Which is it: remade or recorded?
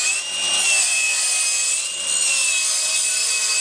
recorded